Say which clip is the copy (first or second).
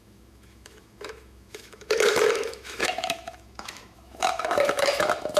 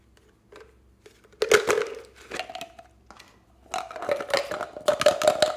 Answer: first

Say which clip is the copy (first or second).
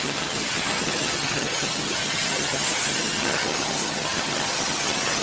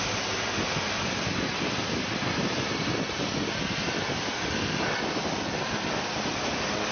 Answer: first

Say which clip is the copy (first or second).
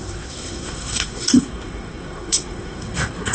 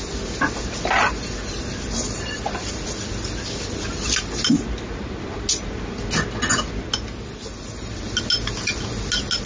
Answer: first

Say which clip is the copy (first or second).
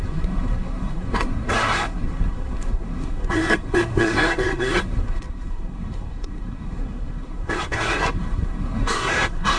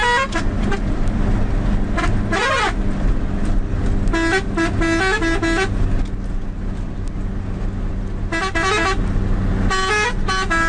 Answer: first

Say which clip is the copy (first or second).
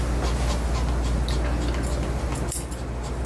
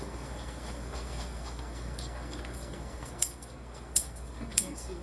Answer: second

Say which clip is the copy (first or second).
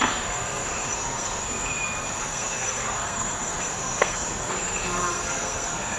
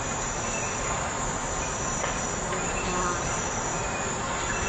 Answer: first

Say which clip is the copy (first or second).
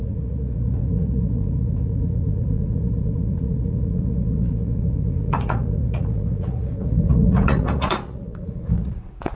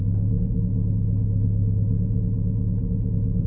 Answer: first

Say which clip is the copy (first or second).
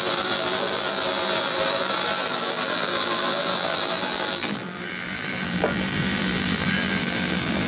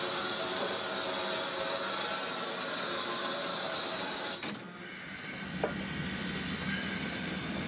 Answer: first